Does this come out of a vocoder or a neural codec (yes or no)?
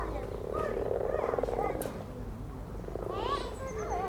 no